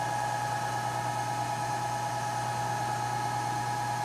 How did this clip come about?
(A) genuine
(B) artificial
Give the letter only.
A